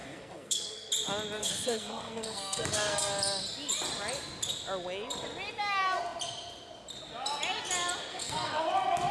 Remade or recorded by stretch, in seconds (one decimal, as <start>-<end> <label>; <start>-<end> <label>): 0.0-0.9 remade; 0.9-1.4 recorded; 1.4-3.1 remade; 3.1-8.1 recorded; 8.1-8.7 remade; 8.7-9.1 recorded